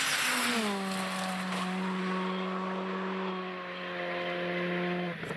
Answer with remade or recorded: recorded